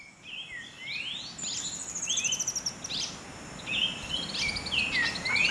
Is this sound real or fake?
real